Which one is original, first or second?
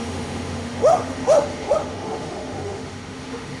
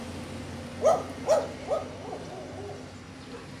second